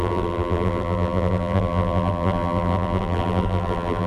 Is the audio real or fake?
fake